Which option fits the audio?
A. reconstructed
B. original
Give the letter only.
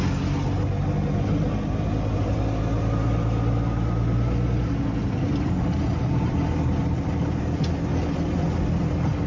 B